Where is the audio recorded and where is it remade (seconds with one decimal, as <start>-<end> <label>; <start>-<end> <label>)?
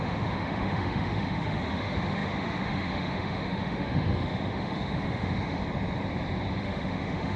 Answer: 0.0-5.6 remade; 5.6-6.6 recorded; 6.6-7.4 remade